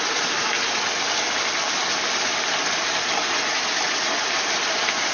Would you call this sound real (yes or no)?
yes